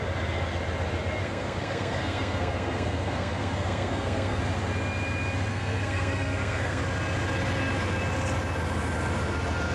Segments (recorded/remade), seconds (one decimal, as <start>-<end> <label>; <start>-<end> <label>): 0.0-1.2 recorded; 1.2-4.4 remade; 4.4-5.5 recorded; 5.5-6.8 remade; 6.8-9.7 recorded